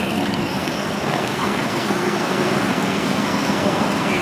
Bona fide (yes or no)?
no